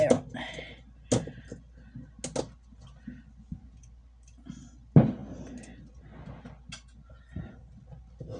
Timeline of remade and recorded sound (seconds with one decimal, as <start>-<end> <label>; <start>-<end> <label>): 0.0-8.4 recorded